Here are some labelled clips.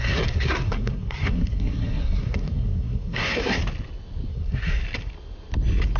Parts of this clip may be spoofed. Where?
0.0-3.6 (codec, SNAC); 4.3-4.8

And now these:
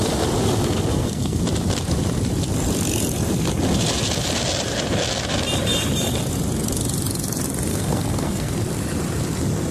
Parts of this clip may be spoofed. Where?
0.9-1.4 (codec, SNAC); 7.7-8.5